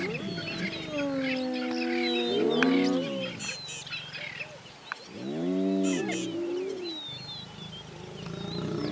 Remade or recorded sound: recorded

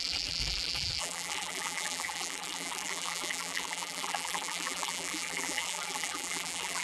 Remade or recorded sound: remade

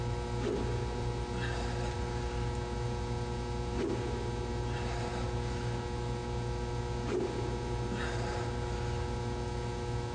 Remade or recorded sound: recorded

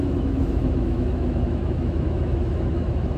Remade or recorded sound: remade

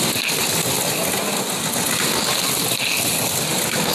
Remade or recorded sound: recorded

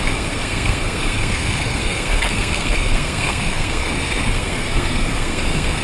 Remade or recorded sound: remade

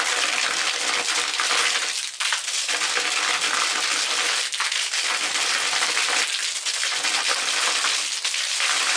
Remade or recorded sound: recorded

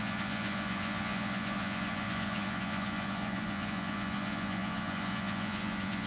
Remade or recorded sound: remade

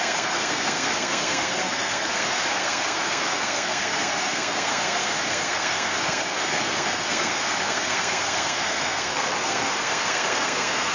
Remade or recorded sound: remade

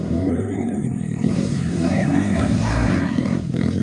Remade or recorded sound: remade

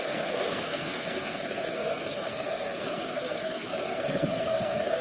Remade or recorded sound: remade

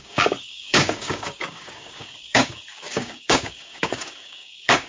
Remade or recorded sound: remade